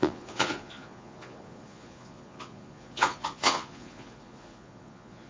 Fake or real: fake